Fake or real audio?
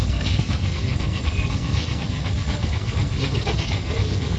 fake